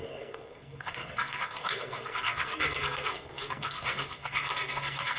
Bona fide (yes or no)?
no